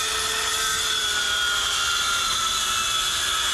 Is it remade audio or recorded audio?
remade